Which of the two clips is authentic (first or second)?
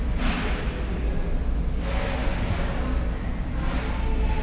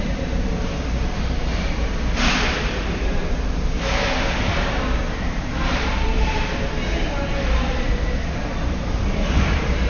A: first